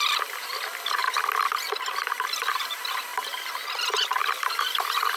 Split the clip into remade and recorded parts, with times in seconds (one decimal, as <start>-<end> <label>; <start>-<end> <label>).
0.0-1.0 remade; 1.0-2.0 recorded; 2.0-3.1 remade; 3.1-4.6 recorded; 4.6-5.2 remade